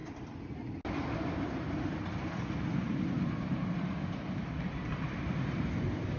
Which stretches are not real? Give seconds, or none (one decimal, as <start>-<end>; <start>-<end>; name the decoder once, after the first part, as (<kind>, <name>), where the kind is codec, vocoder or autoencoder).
none